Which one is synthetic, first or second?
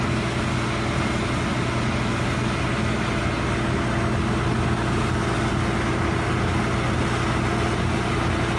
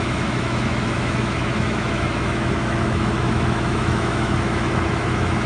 second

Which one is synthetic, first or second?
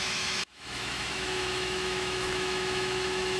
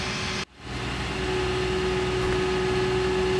first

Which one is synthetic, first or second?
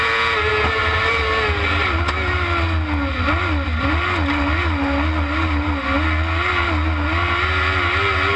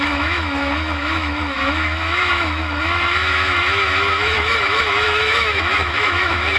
second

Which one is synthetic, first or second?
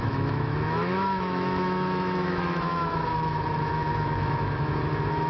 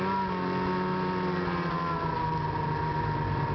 first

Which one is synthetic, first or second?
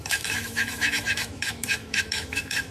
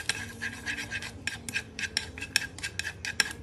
first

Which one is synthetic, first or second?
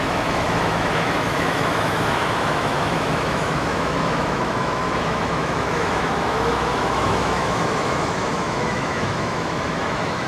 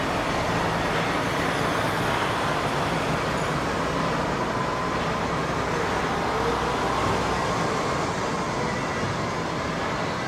first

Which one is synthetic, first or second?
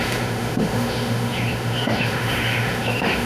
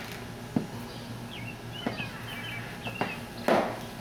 first